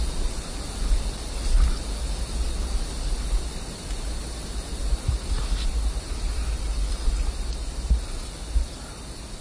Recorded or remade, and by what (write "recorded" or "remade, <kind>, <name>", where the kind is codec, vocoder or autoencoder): recorded